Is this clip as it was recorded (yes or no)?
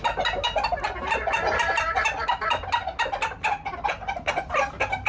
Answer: yes